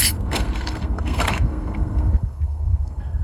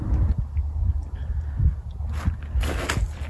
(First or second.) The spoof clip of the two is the first